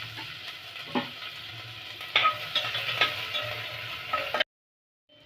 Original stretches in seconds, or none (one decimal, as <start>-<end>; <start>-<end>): 0.0-5.3